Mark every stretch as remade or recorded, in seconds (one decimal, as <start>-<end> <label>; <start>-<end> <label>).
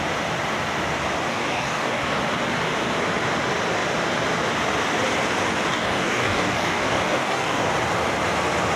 0.0-1.3 recorded; 1.3-2.2 remade; 2.2-5.7 recorded; 5.7-7.7 remade; 7.7-8.8 recorded